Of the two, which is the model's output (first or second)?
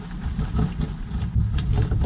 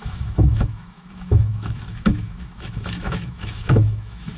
second